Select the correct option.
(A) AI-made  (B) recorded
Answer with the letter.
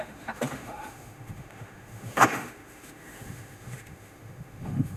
A